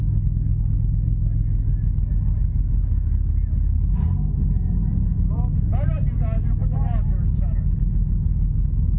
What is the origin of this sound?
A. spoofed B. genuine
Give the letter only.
B